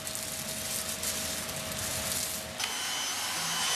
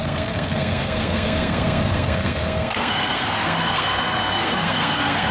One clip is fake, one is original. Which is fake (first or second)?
second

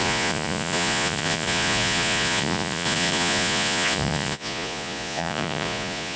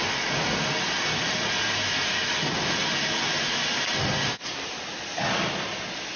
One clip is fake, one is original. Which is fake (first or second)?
first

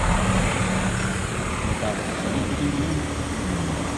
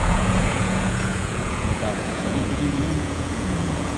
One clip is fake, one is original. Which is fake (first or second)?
second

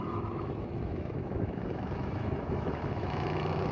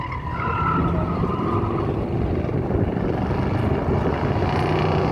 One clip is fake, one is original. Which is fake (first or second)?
first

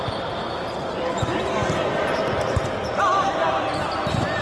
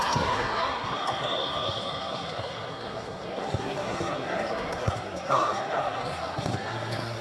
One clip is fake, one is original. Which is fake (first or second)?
second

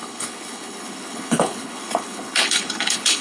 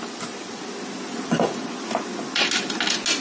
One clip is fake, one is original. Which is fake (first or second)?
first